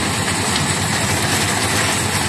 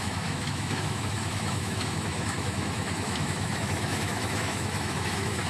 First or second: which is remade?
second